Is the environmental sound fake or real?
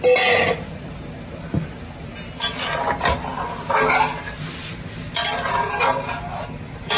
real